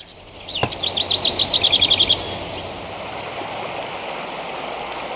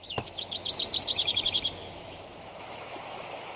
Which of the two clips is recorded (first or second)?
first